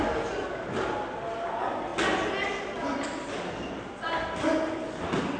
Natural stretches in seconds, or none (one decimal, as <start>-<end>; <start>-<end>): 0.0-5.4